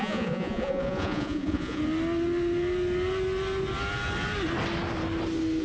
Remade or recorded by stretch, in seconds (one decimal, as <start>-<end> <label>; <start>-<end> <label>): 0.0-1.8 remade; 1.8-5.6 recorded